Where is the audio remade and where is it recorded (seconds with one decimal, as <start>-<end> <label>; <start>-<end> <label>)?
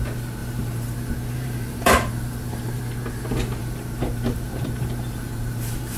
0.0-0.4 recorded; 0.4-2.8 remade; 2.8-3.6 recorded; 3.6-6.0 remade